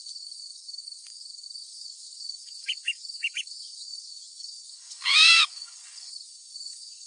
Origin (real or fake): fake